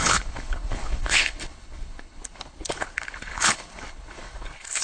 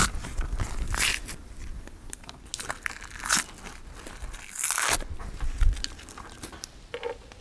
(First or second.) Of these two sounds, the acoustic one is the second